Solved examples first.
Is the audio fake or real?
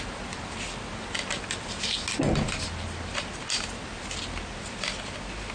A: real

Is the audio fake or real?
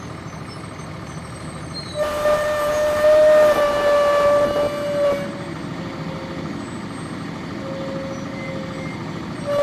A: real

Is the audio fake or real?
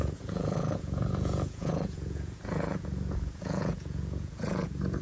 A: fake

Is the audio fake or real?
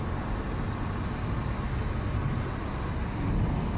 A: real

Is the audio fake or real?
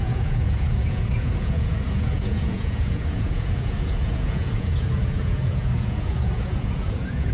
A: fake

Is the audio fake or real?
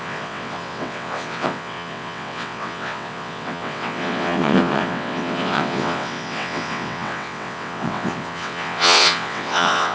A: fake